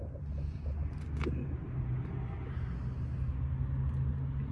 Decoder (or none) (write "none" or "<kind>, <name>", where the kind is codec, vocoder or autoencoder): none